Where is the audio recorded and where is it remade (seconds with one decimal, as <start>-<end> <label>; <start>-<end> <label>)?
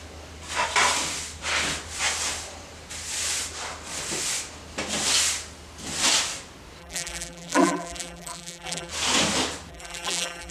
0.0-6.8 recorded; 6.8-8.9 remade; 8.9-9.7 recorded; 9.7-10.5 remade